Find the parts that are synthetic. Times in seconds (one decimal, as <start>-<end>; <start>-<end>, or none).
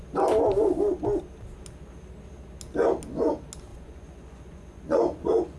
3.7-5.6